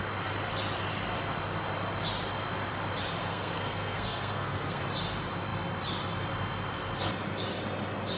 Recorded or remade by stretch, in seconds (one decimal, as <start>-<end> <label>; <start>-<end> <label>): 0.0-3.2 recorded; 3.2-4.8 remade; 4.8-8.2 recorded